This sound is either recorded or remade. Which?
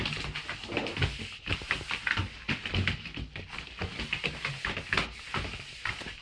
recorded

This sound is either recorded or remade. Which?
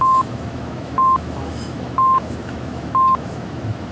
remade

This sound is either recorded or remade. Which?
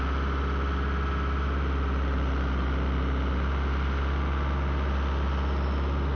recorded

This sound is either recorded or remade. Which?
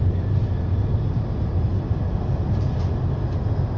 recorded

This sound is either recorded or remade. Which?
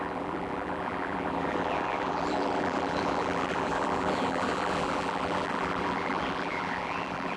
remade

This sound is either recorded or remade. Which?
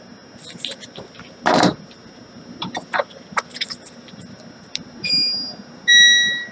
recorded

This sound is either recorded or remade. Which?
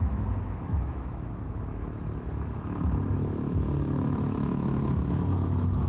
remade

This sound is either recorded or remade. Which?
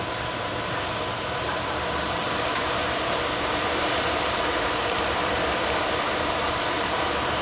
remade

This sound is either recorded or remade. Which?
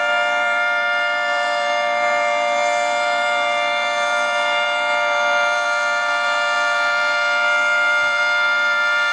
remade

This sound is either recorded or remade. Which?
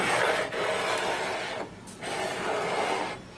recorded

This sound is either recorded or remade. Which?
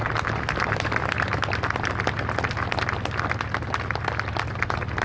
recorded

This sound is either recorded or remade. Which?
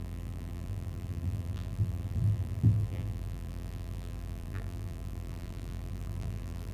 remade